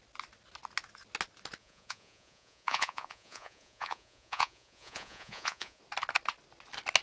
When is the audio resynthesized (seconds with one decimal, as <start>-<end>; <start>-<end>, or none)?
1.6-5.8